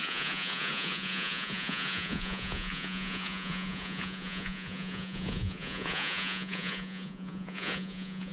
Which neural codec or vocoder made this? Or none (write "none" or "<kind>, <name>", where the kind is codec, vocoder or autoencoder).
vocoder, Vocos